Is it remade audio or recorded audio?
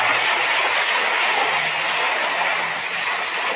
recorded